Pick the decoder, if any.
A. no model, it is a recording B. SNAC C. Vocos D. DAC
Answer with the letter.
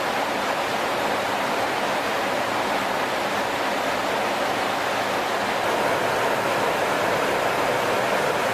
A